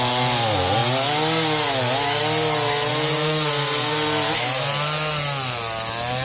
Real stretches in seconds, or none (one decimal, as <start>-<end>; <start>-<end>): 0.0-6.2